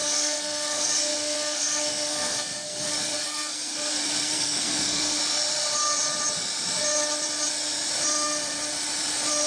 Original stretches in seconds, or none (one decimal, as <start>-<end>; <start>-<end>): 5.2-9.5